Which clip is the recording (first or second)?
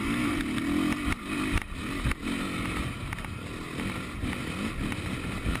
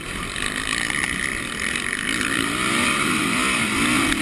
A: first